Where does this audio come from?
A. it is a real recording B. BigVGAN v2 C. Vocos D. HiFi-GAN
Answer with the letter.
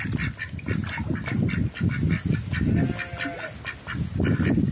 A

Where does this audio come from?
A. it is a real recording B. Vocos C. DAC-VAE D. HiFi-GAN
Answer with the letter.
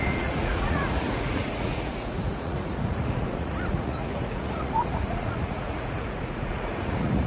B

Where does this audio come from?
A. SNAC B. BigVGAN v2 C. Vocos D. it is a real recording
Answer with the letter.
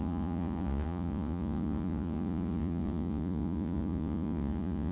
C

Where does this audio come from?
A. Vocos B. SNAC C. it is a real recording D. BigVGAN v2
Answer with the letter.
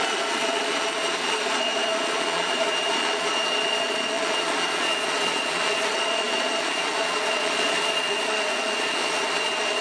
A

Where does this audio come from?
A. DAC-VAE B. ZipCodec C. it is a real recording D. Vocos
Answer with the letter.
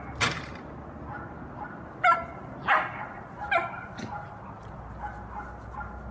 C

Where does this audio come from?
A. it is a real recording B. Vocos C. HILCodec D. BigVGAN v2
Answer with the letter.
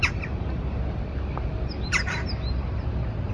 A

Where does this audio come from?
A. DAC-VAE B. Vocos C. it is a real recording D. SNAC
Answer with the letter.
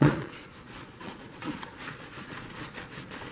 B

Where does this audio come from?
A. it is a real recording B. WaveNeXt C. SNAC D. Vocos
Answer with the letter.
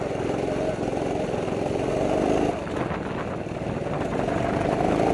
A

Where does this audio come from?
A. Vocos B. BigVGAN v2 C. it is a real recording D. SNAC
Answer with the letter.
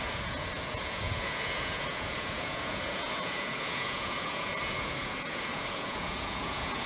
A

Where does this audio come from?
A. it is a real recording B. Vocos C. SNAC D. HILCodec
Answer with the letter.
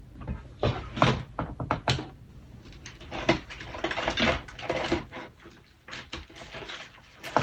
A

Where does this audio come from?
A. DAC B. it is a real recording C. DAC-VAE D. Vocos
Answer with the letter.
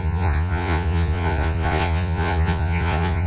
D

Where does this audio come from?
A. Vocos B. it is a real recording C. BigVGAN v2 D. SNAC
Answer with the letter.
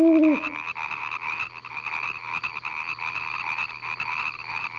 B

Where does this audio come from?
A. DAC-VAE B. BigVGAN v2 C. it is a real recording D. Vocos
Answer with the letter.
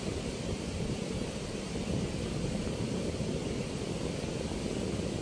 C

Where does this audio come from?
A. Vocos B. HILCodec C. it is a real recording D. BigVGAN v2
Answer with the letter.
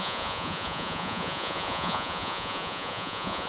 A